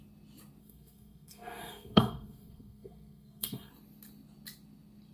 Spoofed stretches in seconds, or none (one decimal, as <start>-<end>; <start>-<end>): 0.6-3.7